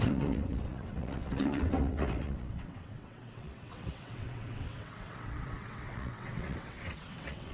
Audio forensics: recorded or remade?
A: remade